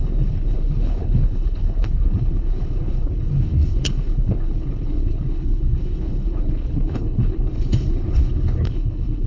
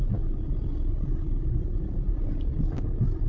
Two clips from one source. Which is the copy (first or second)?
first